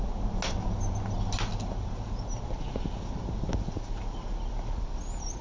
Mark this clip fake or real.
real